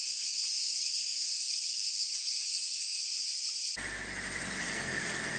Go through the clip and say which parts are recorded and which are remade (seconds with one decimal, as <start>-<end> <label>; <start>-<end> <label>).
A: 0.0-3.0 remade; 3.0-4.6 recorded; 4.6-5.4 remade